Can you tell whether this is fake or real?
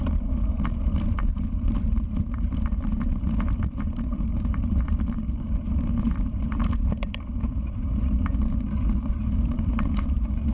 fake